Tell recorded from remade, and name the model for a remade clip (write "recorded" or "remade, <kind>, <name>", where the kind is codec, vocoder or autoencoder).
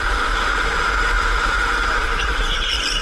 remade, vocoder, BigVGAN v2